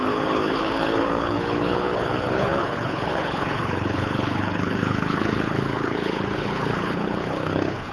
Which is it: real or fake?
fake